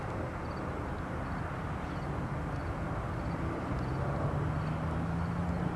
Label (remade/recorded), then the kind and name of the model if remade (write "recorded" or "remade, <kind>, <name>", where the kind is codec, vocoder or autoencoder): recorded